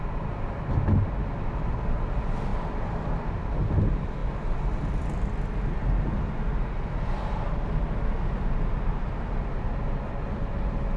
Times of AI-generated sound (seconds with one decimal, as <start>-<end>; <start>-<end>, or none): none